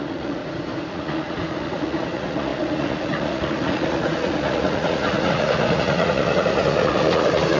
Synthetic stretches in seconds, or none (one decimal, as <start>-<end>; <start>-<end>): 0.0-0.4; 0.9-7.6